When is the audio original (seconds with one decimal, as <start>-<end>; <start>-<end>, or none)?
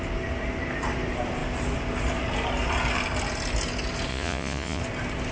0.0-4.1; 4.8-5.3